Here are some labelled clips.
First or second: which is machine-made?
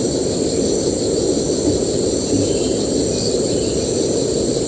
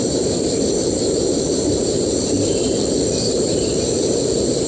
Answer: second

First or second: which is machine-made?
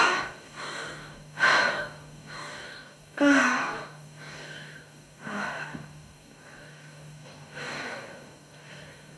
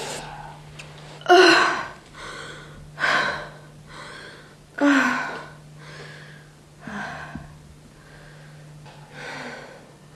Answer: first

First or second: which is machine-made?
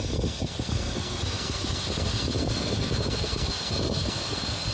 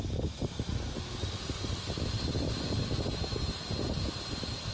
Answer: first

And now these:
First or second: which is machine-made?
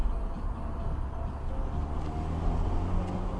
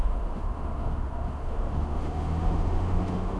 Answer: second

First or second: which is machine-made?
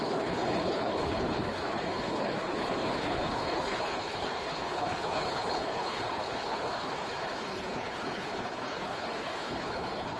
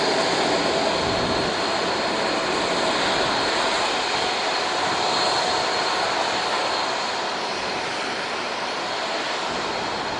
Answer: first